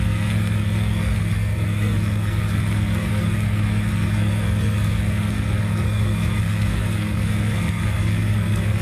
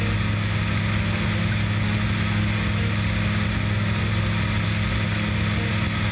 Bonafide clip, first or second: second